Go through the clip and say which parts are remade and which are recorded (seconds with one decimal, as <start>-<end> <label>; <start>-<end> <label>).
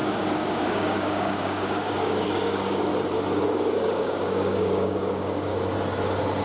0.0-2.9 remade; 2.9-3.5 recorded; 3.5-5.5 remade; 5.5-6.4 recorded